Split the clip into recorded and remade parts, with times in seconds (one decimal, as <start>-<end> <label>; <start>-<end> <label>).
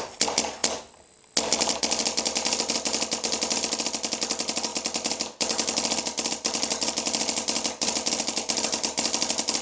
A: 0.0-9.6 recorded